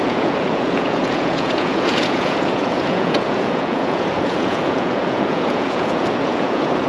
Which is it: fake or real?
fake